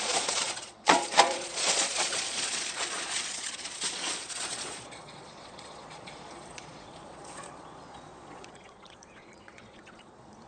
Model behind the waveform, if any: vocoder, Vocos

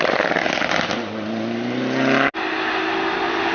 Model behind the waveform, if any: none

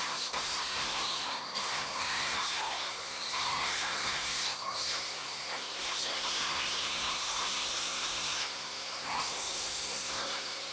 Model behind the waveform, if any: codec, SNAC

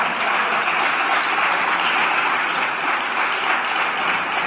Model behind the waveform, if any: none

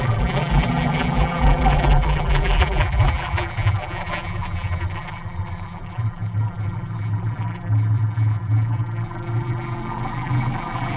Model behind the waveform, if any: vocoder, BigVGAN v2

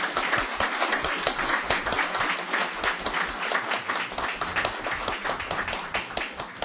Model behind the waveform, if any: none